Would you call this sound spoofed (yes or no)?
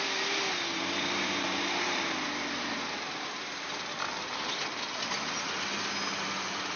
no